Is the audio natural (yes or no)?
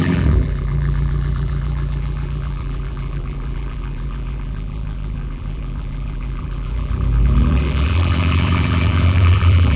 no